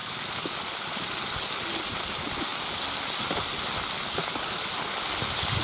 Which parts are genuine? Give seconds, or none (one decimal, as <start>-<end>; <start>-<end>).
0.0-5.6